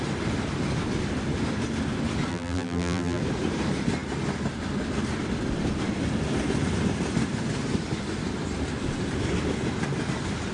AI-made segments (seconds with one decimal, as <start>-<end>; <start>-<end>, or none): 2.3-3.2